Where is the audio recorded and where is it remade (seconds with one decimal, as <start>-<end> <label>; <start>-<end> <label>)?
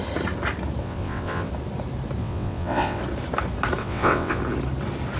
0.0-0.8 recorded; 0.8-1.5 remade; 1.5-2.2 recorded; 2.2-3.0 remade; 3.0-3.8 recorded; 3.8-4.4 remade; 4.4-5.2 recorded